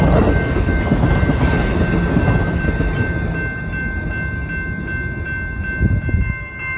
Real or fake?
real